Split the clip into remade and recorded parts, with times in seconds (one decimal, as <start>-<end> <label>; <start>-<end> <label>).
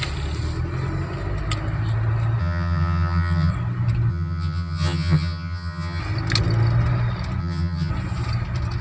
0.0-2.4 recorded; 2.4-3.5 remade; 3.5-4.1 recorded; 4.1-6.0 remade; 6.0-7.4 recorded; 7.4-7.9 remade; 7.9-8.8 recorded